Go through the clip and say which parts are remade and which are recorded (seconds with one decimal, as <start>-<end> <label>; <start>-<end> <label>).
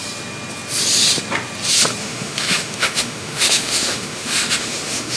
0.0-2.0 recorded; 2.0-5.2 remade